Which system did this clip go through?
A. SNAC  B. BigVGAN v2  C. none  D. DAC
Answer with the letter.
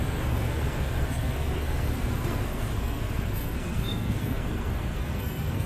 A